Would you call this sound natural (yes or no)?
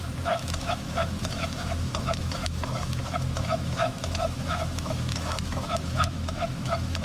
no